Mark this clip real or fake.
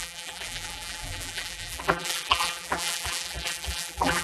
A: fake